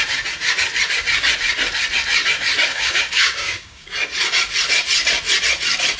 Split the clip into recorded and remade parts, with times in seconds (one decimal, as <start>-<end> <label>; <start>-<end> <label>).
0.0-2.7 recorded; 2.7-3.9 remade; 3.9-6.0 recorded